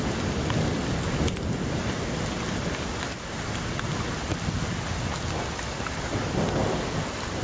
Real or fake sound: real